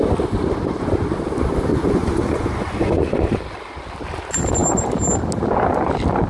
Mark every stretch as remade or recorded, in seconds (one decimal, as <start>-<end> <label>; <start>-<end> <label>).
0.0-1.7 recorded; 1.7-3.4 remade; 3.4-6.3 recorded

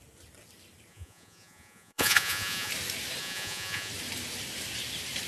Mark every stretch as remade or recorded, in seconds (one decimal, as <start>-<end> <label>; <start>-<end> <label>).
0.0-0.9 recorded; 0.9-2.7 remade; 2.7-3.2 recorded; 3.2-3.9 remade; 3.9-5.3 recorded